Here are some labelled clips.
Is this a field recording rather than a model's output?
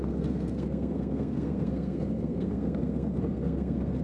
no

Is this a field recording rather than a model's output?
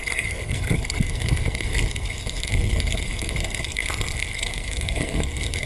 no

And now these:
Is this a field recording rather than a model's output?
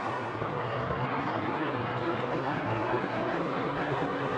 no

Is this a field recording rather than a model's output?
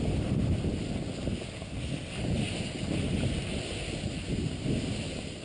yes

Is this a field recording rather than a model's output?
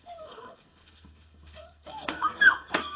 no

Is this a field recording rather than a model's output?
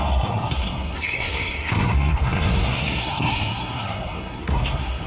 no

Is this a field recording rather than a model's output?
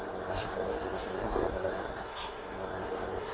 no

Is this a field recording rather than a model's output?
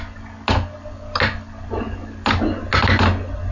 yes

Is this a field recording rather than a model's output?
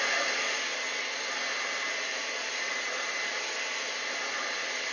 yes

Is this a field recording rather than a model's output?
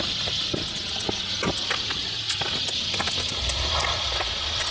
yes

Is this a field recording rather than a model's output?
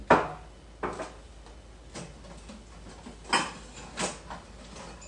yes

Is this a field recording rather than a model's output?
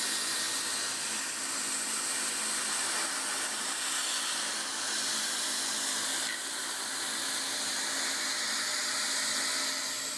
yes